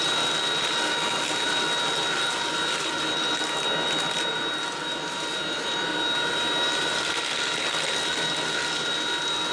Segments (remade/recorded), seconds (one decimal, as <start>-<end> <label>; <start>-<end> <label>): 0.0-9.5 recorded